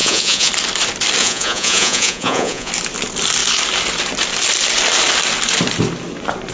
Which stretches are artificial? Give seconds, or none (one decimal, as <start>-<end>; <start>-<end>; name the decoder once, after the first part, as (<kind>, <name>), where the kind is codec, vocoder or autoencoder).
0.0-0.5 (vocoder, Vocos); 1.2-2.7